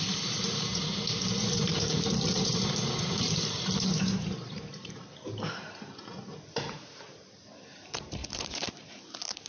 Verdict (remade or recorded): remade